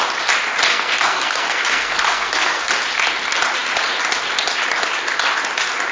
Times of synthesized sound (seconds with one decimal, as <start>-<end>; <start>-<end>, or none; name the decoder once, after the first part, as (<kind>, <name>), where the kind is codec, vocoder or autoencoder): 0.7-2.7 (codec, SNAC)